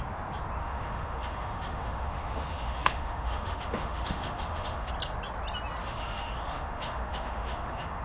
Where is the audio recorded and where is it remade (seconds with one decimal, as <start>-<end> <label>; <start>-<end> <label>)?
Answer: 0.0-0.6 recorded; 0.6-4.9 remade; 4.9-5.8 recorded; 5.8-8.0 remade